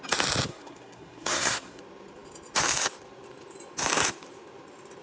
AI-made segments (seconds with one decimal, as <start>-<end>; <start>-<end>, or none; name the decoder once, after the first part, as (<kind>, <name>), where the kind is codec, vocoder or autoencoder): 0.5-1.8 (codec, SNAC)